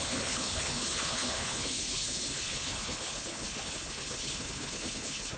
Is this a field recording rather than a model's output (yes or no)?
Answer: no